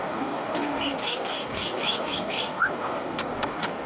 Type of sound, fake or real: fake